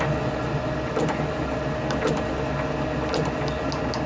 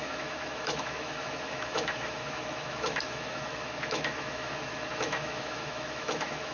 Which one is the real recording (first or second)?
first